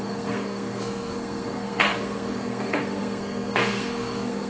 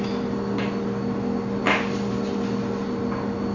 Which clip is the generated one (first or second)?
first